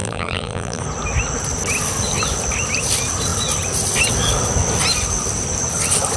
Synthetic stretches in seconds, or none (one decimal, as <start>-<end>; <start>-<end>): 0.0-0.8